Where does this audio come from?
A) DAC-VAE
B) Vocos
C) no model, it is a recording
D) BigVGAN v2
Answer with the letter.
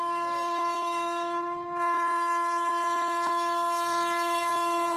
A